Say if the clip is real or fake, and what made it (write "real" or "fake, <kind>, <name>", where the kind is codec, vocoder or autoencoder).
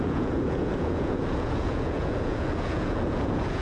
fake, vocoder, Vocos